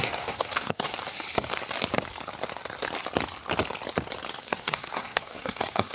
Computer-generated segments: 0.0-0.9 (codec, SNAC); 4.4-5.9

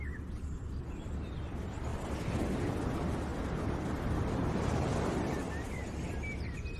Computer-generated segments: none

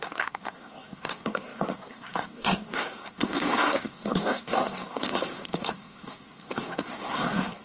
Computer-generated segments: 0.0-7.6 (codec, SNAC)

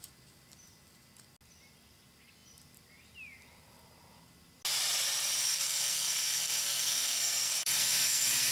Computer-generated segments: 5.4-8.5 (codec, SNAC)

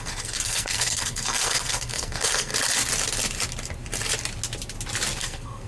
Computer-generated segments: 0.0-2.5 (codec, SNAC); 5.2-5.7

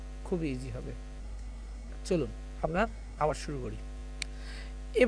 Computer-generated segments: 1.2-1.9 (codec, SNAC); 2.6-3.3

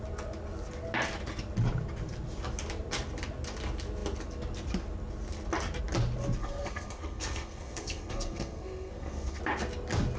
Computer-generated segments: 6.4-9.4 (codec, SNAC)